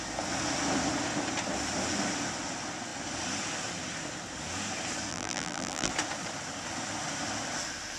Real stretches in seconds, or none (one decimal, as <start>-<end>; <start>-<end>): 0.0-5.1; 5.9-8.0